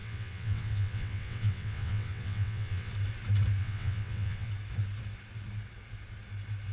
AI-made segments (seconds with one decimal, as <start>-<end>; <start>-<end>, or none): 0.0-2.9; 3.6-4.5